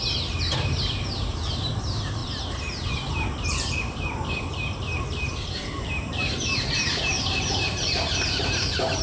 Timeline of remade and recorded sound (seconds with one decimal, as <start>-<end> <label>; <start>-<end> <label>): 0.0-9.0 remade